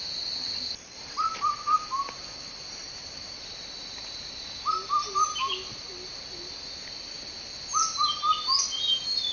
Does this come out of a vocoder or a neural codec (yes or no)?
no